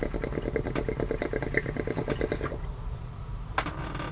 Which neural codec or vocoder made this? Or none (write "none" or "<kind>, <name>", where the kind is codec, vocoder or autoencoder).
none